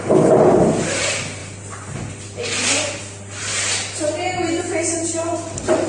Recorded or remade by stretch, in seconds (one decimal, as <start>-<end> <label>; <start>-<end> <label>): 0.0-5.9 recorded